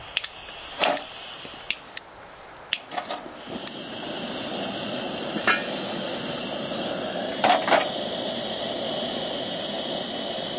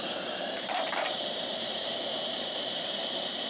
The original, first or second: first